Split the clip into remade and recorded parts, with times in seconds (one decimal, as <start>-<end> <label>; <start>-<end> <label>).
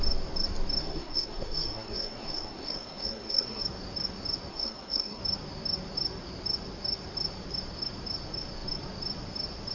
0.0-0.8 recorded; 0.8-3.6 remade; 3.6-4.5 recorded; 4.5-5.2 remade; 5.2-9.7 recorded